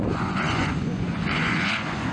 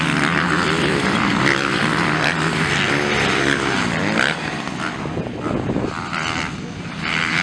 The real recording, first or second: second